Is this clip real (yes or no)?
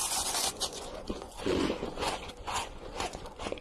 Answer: no